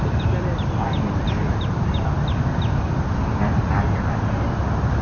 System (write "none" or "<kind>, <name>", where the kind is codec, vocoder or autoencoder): none